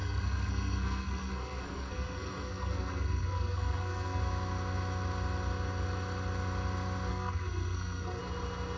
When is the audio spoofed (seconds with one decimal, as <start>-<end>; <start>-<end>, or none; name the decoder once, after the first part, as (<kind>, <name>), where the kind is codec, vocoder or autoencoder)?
0.0-4.2 (codec, SNAC); 7.1-8.2